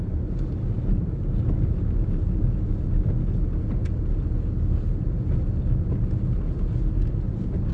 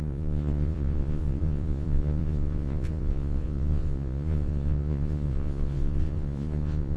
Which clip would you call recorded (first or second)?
first